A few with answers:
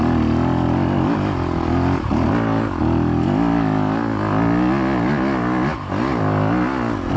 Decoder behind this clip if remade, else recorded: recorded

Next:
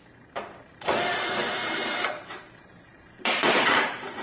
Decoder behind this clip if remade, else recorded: remade, vocoder, BigVGAN v2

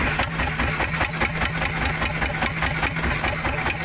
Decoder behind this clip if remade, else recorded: recorded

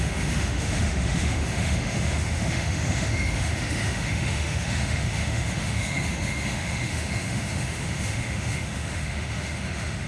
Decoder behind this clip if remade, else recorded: remade, autoencoder, DAC-VAE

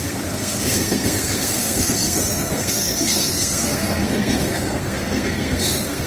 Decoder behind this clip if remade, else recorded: remade, codec, SNAC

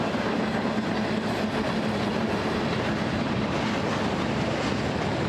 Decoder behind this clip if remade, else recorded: recorded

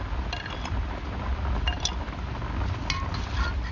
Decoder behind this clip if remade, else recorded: recorded